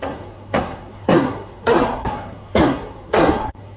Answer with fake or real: fake